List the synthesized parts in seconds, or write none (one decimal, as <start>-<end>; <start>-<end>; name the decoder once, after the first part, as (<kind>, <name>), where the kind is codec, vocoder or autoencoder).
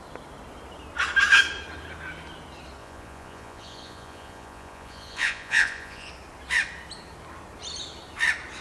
2.8-6.1 (vocoder, Vocos)